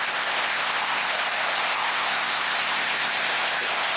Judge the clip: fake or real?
fake